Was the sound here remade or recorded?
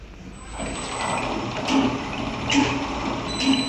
recorded